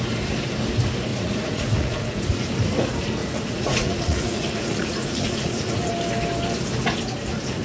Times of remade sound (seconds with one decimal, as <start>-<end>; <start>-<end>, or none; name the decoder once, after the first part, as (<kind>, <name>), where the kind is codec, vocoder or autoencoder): 1.1-2.2 (vocoder, Vocos); 3.2-5.9